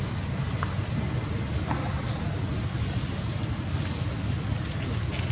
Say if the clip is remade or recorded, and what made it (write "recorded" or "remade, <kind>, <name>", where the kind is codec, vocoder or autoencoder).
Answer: recorded